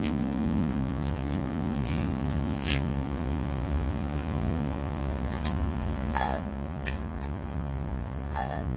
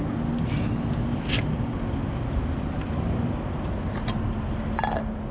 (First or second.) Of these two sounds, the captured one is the second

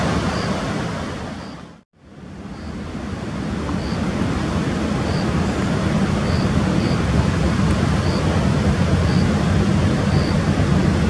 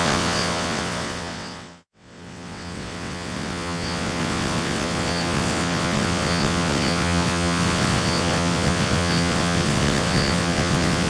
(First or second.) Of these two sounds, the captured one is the first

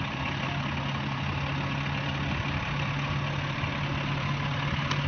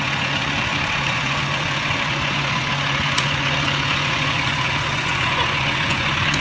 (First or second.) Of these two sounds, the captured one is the first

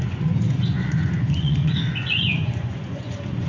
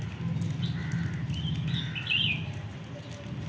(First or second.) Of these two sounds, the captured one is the second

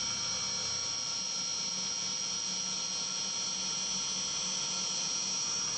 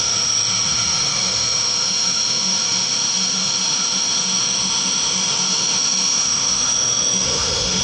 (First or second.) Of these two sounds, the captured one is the first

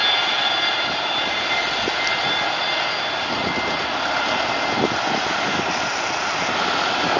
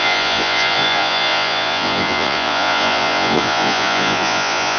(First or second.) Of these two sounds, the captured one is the first